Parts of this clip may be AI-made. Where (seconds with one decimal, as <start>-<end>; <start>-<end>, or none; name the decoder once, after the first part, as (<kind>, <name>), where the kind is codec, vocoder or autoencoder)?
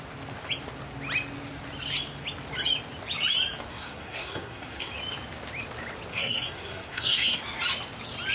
3.7-4.9 (codec, SNAC); 6.1-7.4